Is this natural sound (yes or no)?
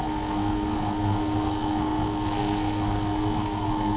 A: no